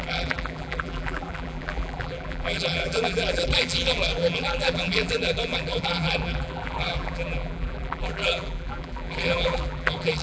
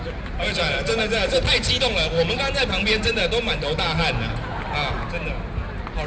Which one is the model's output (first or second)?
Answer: first